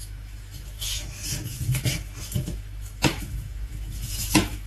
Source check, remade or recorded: remade